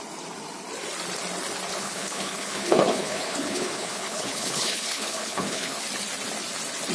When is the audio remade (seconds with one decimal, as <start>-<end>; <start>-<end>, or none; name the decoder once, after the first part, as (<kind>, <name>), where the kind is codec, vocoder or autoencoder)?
1.7-5.8 (codec, HILCodec)

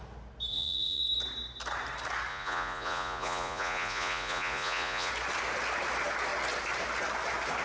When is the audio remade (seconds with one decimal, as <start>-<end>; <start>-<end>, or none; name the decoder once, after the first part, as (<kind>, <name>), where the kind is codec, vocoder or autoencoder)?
0.5-1.0 (vocoder, Vocos); 2.3-5.1